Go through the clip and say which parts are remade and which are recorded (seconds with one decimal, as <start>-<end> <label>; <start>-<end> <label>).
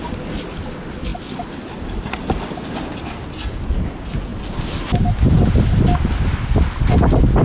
0.0-7.4 recorded